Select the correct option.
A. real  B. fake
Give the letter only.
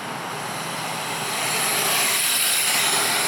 B